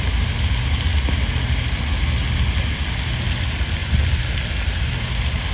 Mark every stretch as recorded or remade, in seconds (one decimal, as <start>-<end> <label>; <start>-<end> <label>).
0.0-5.5 recorded